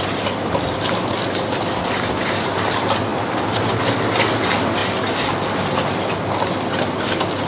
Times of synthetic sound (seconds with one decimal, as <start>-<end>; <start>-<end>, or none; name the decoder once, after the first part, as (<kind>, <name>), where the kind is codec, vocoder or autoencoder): 3.1-3.8 (vocoder, BigVGAN v2)

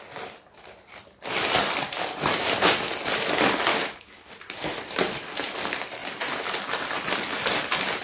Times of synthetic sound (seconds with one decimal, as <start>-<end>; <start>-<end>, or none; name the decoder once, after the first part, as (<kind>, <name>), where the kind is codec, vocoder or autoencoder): 3.7-4.3 (autoencoder, DAC-VAE)

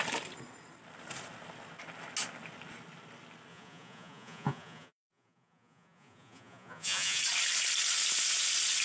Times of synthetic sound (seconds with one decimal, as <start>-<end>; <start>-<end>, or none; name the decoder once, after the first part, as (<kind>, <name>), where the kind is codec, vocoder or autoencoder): 3.5-7.2 (vocoder, Vocos)